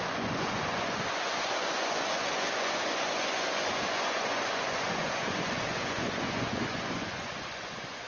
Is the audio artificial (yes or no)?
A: yes